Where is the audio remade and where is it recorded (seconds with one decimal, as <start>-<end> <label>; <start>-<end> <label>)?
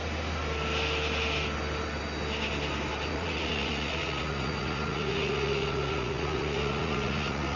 0.0-3.1 recorded; 3.1-7.6 remade